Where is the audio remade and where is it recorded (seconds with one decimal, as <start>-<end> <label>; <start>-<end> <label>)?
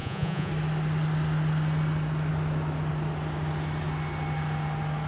0.0-0.5 remade; 0.5-5.1 recorded